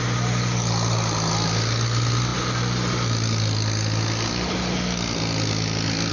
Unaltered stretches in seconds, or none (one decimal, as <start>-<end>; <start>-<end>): 0.0-6.1

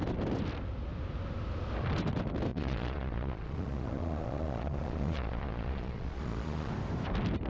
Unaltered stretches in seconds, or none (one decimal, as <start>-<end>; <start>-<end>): 0.0-2.5; 6.7-7.5

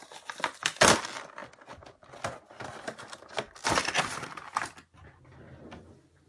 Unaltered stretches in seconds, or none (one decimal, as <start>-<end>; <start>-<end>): 0.0-6.3

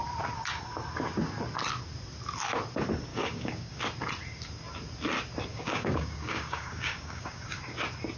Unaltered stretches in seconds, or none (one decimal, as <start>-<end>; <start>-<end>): 0.0-3.1; 3.8-5.5; 7.6-8.2

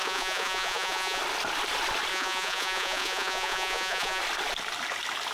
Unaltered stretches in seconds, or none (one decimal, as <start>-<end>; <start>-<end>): 1.2-2.1; 4.2-5.3

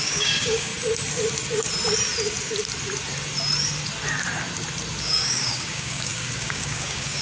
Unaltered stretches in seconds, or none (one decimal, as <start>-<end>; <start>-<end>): 0.7-5.0

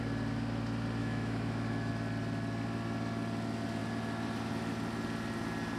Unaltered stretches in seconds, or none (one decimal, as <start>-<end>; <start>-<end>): 0.0-1.0; 1.9-5.8